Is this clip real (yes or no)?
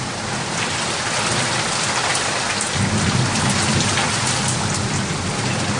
yes